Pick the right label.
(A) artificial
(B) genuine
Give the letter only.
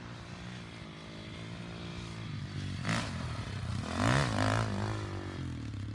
B